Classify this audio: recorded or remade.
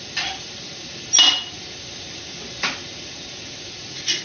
recorded